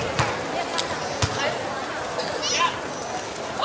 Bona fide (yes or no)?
yes